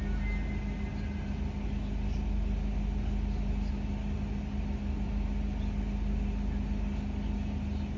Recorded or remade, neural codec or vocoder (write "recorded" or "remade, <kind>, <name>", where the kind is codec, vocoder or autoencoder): recorded